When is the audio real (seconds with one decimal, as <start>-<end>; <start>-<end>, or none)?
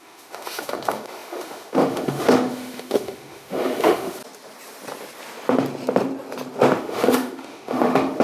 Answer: 4.2-6.8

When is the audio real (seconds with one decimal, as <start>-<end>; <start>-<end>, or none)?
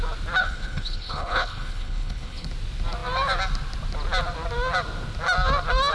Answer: 0.0-0.4; 2.5-5.9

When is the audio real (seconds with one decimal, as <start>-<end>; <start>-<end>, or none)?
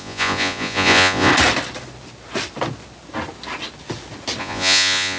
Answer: 1.3-4.4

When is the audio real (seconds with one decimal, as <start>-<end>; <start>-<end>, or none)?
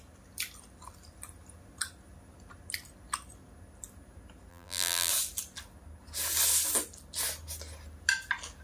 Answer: 0.0-4.5; 5.1-8.6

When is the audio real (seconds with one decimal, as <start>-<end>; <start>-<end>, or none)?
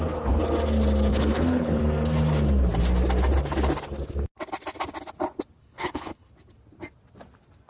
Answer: 0.0-1.1; 1.8-5.6; 6.3-7.7